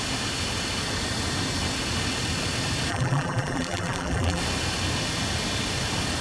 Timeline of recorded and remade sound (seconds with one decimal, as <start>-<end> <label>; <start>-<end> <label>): 0.0-2.9 recorded; 2.9-4.4 remade; 4.4-6.2 recorded

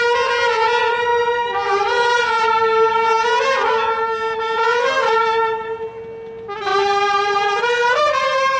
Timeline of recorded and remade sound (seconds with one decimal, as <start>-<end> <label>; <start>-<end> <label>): 0.0-1.1 recorded; 1.1-2.2 remade; 2.2-6.7 recorded; 6.7-8.0 remade; 8.0-8.6 recorded

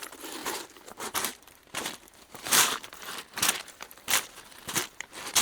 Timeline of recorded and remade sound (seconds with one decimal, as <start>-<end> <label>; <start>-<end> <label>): 0.0-5.4 remade

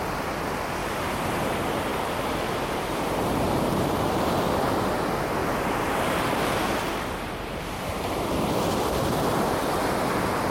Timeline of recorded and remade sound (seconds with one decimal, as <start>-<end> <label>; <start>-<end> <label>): 0.0-1.9 recorded; 1.9-4.7 remade; 4.7-5.4 recorded; 5.4-7.6 remade; 7.6-10.5 recorded

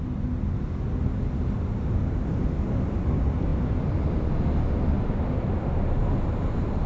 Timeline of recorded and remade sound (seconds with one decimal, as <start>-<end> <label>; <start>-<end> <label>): 0.0-6.0 recorded; 6.0-6.9 remade

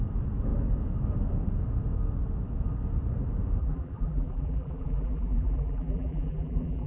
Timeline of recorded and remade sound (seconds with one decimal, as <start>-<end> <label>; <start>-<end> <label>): 0.0-3.6 recorded; 3.6-6.9 remade

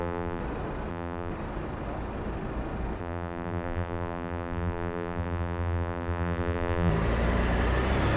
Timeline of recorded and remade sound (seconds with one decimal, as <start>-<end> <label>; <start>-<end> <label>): 0.0-0.4 remade; 0.4-0.9 recorded; 0.9-1.3 remade; 1.3-3.0 recorded; 3.0-6.9 remade; 6.9-8.2 recorded